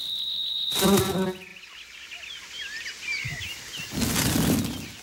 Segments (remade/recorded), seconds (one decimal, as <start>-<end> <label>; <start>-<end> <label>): 0.0-5.0 recorded